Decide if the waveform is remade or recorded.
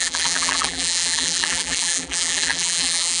remade